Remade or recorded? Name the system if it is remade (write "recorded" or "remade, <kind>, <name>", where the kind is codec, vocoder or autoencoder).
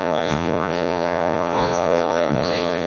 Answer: remade, vocoder, Vocos